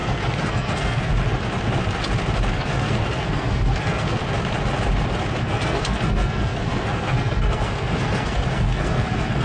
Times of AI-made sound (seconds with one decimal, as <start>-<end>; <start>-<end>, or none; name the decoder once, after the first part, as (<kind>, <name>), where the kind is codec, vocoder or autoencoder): 0.0-1.1 (codec, SNAC); 2.5-4.2; 5.4-9.4